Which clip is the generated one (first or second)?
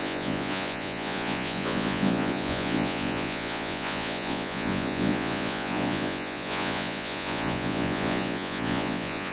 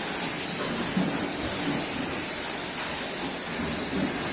first